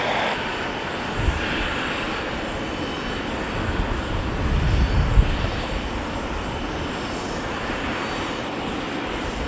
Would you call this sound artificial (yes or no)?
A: no